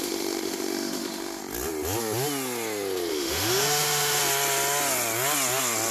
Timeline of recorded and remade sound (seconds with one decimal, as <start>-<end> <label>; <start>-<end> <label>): 0.0-1.4 remade; 1.4-3.1 recorded; 3.1-4.2 remade; 4.2-5.9 recorded